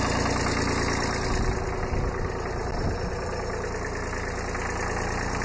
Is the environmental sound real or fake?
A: real